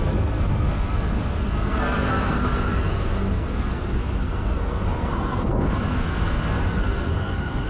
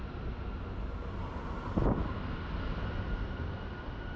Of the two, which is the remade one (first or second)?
first